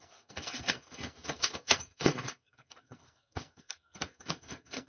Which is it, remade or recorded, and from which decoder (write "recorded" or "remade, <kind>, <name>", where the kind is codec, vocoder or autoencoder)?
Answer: remade, codec, SNAC